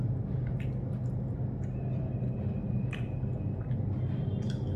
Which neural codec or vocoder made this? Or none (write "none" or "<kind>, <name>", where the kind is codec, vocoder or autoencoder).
vocoder, BigVGAN v2